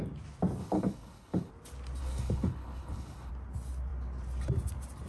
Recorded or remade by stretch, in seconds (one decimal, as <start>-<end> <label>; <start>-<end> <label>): 0.0-0.6 recorded; 0.6-1.5 remade; 1.5-2.0 recorded; 2.0-3.3 remade; 3.3-5.1 recorded